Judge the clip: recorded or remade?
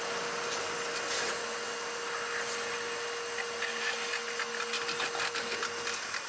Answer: recorded